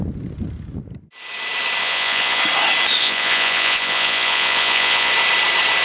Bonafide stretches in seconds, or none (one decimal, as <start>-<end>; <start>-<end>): 0.0-1.8; 2.4-3.0; 5.1-5.8